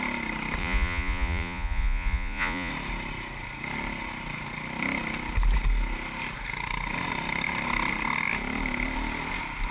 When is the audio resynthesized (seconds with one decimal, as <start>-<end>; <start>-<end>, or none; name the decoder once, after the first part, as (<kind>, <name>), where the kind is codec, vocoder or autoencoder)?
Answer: 0.6-2.7 (vocoder, Vocos)